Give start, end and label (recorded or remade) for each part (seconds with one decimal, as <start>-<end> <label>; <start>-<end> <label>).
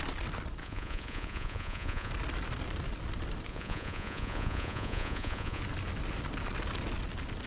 0.0-0.6 recorded; 0.6-2.1 remade; 2.1-3.5 recorded; 3.5-5.6 remade; 5.6-7.5 recorded